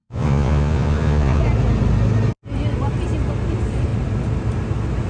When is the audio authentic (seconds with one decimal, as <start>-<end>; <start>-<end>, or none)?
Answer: 1.4-5.1